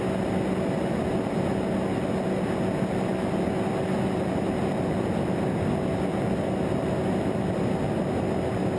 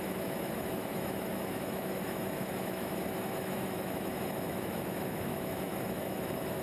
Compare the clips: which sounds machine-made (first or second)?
second